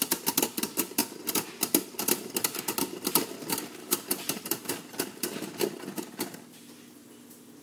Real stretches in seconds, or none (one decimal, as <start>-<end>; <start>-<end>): 0.0-3.8; 4.7-7.6